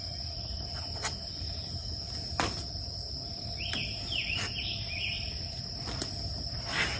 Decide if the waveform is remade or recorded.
recorded